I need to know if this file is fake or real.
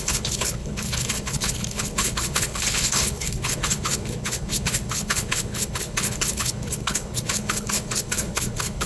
fake